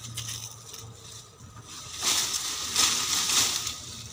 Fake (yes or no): no